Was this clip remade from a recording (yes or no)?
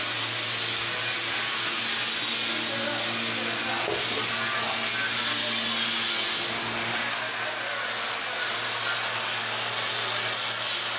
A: no